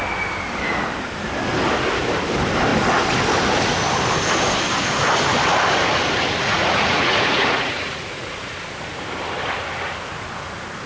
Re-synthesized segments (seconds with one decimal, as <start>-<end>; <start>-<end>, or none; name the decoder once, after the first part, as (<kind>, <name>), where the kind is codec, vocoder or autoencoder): 6.4-8.5 (vocoder, Vocos)